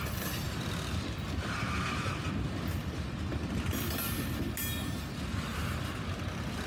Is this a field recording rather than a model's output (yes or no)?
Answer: yes